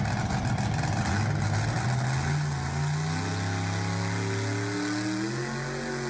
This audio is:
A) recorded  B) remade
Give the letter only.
A